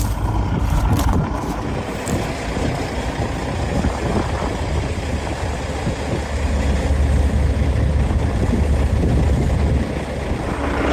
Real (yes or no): yes